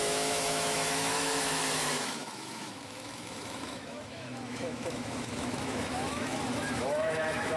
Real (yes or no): no